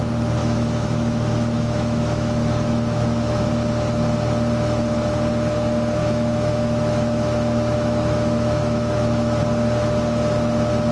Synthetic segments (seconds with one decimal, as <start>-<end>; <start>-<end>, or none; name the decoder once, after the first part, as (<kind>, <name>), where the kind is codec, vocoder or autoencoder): 0.4-3.5 (autoencoder, DAC-VAE); 6.0-9.4